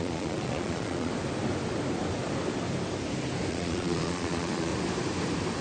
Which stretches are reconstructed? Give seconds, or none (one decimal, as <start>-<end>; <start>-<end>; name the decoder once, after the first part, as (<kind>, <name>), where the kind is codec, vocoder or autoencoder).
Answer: 0.0-1.1 (vocoder, Vocos); 3.5-4.7